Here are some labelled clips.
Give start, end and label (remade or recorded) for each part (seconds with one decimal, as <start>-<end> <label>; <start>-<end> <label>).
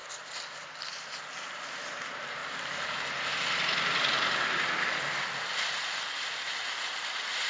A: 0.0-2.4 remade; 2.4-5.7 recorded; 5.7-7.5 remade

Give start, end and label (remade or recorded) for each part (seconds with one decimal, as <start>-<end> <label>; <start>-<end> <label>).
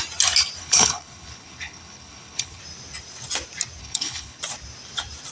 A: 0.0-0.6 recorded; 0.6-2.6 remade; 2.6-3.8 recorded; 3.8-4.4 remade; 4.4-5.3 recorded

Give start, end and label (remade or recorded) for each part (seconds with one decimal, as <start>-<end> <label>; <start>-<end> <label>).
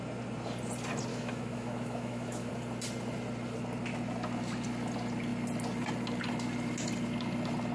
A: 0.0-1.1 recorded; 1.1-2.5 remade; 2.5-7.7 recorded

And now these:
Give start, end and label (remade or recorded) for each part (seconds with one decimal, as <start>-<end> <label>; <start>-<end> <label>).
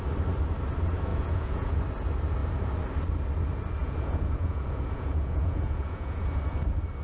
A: 0.0-1.1 recorded; 1.1-1.8 remade; 1.8-3.8 recorded; 3.8-6.4 remade; 6.4-7.0 recorded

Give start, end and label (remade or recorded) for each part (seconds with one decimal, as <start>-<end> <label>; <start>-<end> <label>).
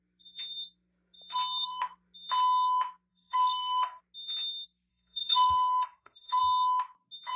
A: 0.0-3.1 recorded; 3.1-4.0 remade; 4.0-4.9 recorded; 4.9-6.4 remade; 6.4-7.4 recorded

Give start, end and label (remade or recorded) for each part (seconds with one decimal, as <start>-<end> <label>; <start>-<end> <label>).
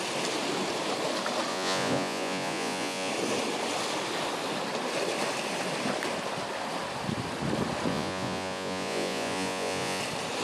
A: 0.0-1.5 recorded; 1.5-3.1 remade; 3.1-7.9 recorded; 7.9-10.0 remade; 10.0-10.4 recorded